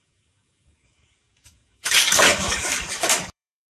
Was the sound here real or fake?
fake